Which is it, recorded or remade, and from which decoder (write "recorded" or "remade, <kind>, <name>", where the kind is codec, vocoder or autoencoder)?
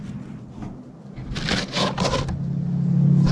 recorded